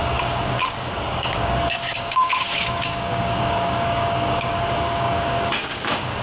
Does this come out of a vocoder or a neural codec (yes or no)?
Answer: yes